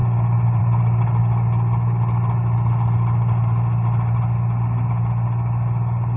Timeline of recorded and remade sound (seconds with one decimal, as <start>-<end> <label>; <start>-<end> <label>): 0.0-6.2 recorded